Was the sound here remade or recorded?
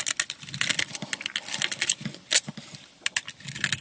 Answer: recorded